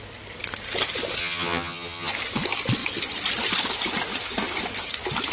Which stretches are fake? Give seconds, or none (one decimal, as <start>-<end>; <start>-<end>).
1.2-2.1